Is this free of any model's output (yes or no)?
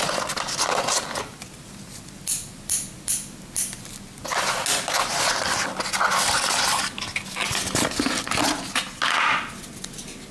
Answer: yes